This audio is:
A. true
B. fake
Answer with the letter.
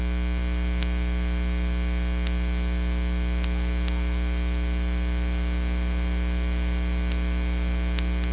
A